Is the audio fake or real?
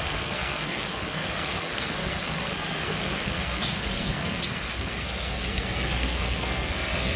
fake